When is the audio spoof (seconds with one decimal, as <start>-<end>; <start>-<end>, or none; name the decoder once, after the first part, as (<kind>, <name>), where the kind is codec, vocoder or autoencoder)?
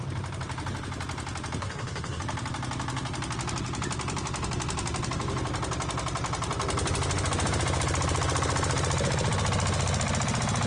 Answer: 1.6-2.2 (codec, SNAC)